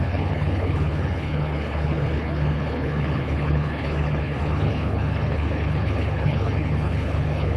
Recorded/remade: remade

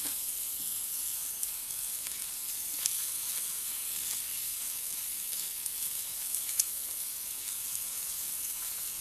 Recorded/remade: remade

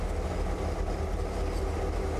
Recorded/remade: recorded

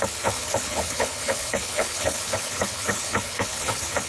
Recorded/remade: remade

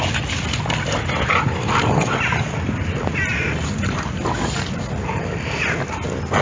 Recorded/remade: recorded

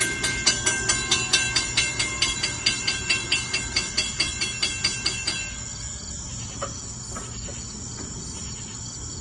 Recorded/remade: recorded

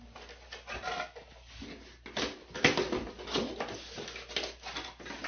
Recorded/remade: recorded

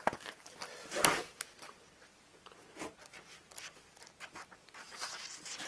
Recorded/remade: recorded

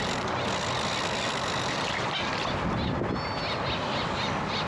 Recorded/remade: recorded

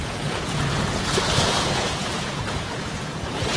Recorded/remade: remade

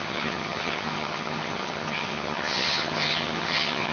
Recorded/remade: remade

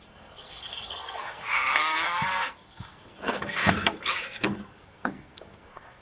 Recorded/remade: remade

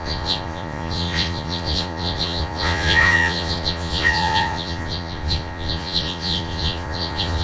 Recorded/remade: remade